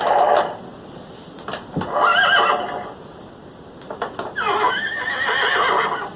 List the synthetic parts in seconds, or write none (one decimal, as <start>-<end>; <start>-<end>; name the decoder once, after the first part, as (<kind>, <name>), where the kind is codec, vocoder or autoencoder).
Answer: none